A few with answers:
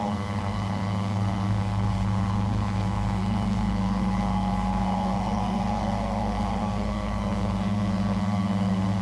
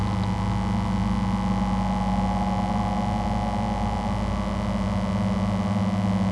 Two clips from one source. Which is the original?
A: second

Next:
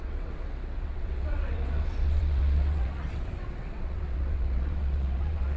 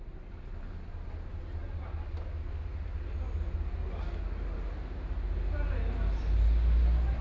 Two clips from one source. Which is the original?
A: second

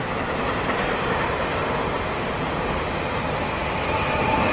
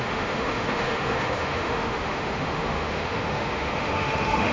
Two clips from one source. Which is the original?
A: first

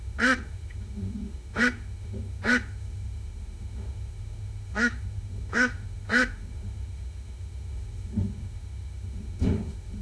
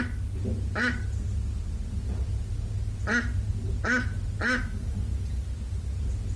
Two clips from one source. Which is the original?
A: second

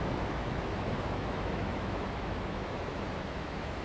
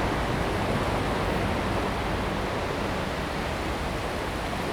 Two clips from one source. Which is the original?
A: second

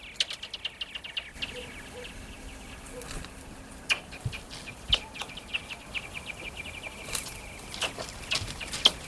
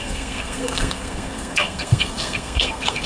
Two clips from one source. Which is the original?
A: first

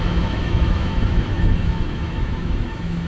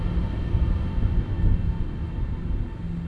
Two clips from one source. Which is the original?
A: second